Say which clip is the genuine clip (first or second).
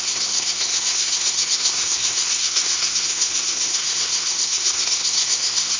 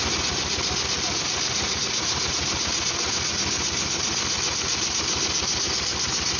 second